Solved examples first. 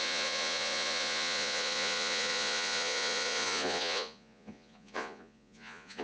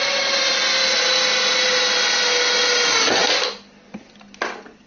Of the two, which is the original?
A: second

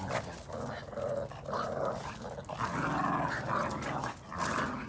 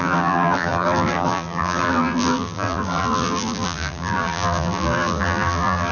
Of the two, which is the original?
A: first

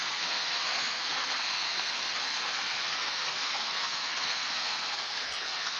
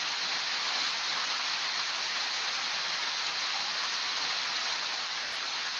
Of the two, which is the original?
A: second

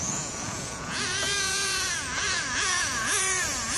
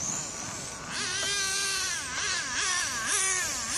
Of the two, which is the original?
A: second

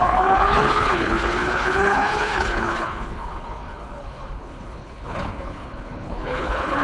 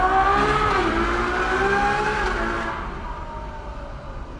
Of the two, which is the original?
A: second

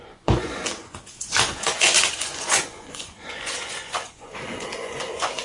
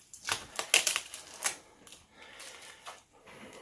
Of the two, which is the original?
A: second